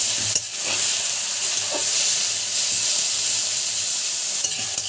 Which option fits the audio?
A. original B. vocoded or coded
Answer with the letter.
B